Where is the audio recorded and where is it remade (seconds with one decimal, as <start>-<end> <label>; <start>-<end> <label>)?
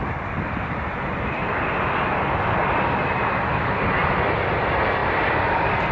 0.0-5.9 recorded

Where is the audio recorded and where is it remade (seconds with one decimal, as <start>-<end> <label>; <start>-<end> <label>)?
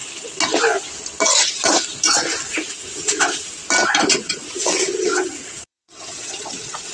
0.0-2.5 recorded; 2.5-3.6 remade; 3.6-4.1 recorded; 4.1-6.9 remade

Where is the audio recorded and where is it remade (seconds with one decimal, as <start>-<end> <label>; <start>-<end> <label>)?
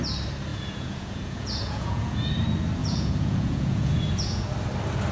0.0-0.5 recorded; 0.5-2.3 remade; 2.3-2.8 recorded; 2.8-4.5 remade; 4.5-5.1 recorded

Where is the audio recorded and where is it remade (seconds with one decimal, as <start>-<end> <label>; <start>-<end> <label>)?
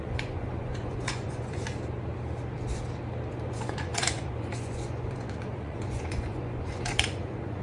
0.0-1.6 remade; 1.6-3.3 recorded; 3.3-7.6 remade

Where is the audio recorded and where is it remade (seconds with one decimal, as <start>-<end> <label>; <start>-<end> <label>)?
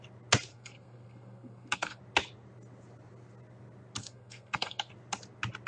0.0-0.5 recorded; 0.5-2.0 remade; 2.0-4.0 recorded; 4.0-4.9 remade; 4.9-5.7 recorded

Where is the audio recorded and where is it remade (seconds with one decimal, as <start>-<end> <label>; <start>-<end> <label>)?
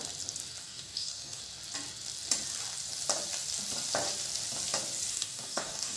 0.0-0.6 recorded; 0.6-1.4 remade; 1.4-5.1 recorded; 5.1-6.0 remade